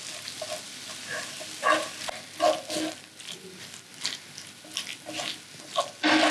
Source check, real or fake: real